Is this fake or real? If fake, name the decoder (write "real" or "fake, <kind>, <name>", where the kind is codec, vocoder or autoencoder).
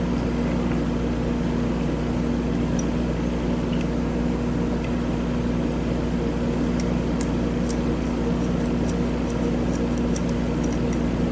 real